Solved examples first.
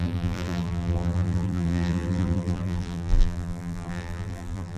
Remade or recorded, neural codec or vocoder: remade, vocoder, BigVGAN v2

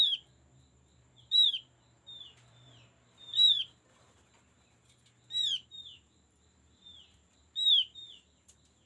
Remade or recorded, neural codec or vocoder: remade, vocoder, BigVGAN v2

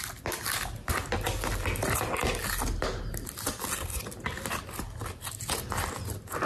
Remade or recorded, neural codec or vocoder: recorded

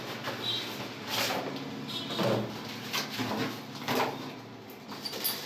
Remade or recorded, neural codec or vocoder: recorded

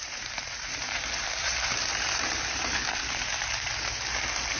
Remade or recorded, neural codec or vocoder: remade, vocoder, BigVGAN v2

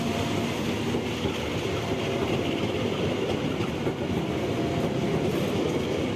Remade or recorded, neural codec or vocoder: recorded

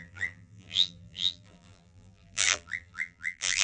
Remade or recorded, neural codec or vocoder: remade, vocoder, BigVGAN v2